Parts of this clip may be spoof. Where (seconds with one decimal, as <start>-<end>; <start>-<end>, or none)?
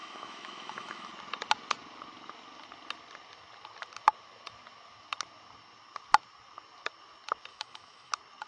0.0-1.1; 7.5-8.1